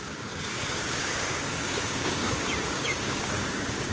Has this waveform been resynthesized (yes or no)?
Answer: yes